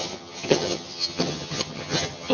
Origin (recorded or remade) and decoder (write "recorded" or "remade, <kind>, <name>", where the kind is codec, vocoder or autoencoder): remade, vocoder, HiFi-GAN